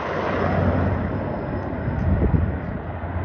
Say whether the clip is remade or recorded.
recorded